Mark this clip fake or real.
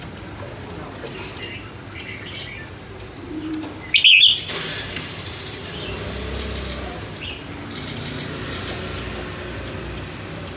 real